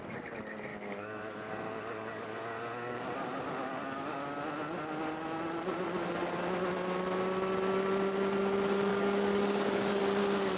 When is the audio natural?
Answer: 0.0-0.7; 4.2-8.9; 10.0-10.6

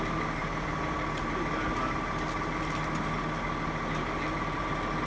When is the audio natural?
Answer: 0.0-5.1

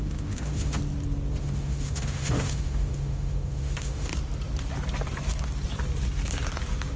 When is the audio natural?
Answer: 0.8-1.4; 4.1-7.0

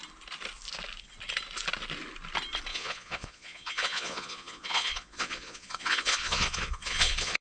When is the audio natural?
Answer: 0.0-2.7

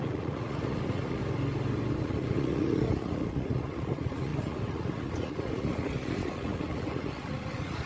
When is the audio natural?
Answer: 1.2-2.0

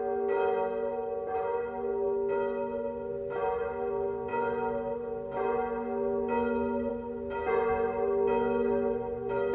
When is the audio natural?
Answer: 0.0-9.5

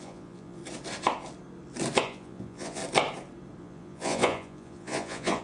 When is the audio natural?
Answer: 0.6-2.0; 2.8-3.6